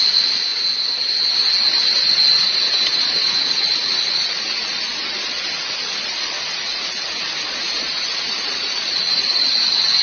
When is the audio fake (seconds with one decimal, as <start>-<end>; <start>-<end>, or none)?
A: 0.0-0.5; 3.3-10.0

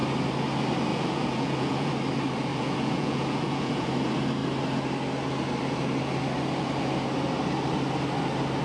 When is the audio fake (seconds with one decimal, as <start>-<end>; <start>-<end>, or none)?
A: 0.9-1.9; 2.5-3.9

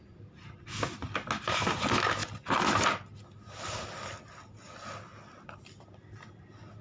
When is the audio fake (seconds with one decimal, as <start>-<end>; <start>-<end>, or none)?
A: none

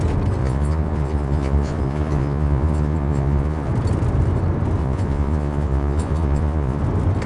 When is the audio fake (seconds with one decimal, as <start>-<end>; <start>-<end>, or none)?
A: 0.4-3.7; 4.8-6.8

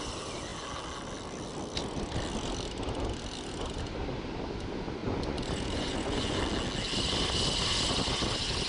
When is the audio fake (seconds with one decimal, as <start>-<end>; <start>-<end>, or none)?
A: 5.0-6.4

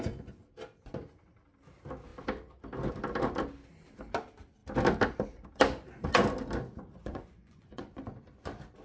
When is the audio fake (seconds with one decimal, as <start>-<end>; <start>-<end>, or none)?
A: 7.0-8.0

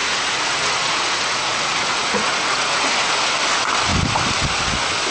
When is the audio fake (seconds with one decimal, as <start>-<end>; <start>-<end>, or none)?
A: 0.0-3.1

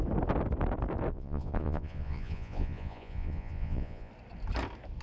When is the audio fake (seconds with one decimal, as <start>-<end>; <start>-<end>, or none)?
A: 1.1-4.1